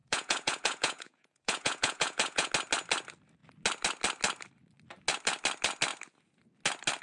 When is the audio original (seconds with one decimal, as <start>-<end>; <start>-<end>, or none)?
2.5-7.0